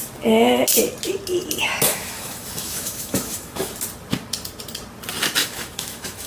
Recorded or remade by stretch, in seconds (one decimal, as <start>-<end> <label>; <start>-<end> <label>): 0.0-1.9 recorded; 1.9-3.7 remade; 3.7-5.4 recorded; 5.4-6.3 remade